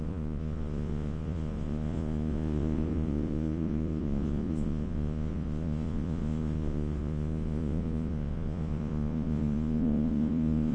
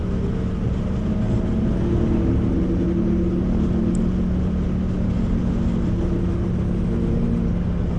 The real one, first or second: second